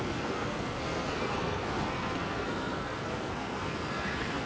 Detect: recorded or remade remade